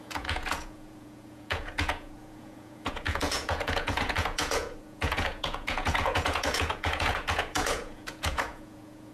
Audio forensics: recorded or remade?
remade